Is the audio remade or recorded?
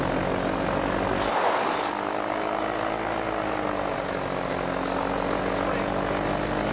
recorded